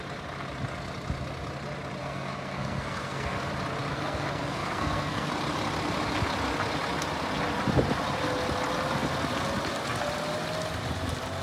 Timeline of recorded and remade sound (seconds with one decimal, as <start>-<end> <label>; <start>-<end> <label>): 0.0-2.0 recorded; 2.0-3.5 remade; 3.5-3.9 recorded; 3.9-5.3 remade; 5.3-11.4 recorded